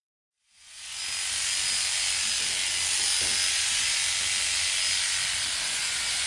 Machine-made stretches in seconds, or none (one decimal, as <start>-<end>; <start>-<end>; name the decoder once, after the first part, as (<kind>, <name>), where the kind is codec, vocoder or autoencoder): 0.0-1.0 (vocoder, Vocos); 3.5-4.0; 5.7-6.3